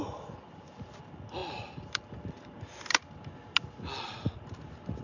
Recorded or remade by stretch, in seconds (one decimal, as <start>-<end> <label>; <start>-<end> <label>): 0.0-5.0 recorded